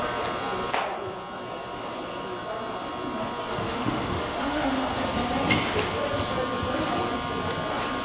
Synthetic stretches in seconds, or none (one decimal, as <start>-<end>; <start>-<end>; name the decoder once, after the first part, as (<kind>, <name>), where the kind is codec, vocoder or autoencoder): 3.5-4.7 (autoencoder, DAC-VAE)